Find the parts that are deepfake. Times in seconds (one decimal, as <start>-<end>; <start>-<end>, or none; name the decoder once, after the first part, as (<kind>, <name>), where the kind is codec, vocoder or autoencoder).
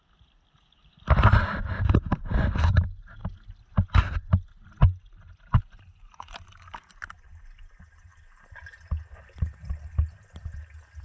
none